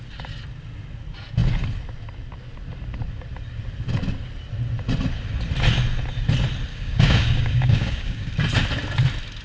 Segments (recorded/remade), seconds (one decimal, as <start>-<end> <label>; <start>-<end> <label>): 0.0-6.7 recorded; 6.7-8.3 remade; 8.3-9.4 recorded